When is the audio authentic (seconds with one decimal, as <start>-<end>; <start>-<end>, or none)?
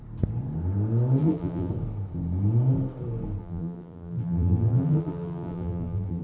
0.0-1.2; 1.7-3.4